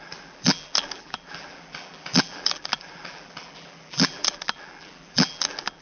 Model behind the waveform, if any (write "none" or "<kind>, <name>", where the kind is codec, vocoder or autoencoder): vocoder, BigVGAN v2